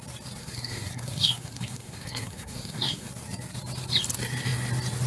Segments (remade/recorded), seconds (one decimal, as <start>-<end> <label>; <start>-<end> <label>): 0.0-0.4 recorded; 0.4-3.1 remade; 3.1-5.1 recorded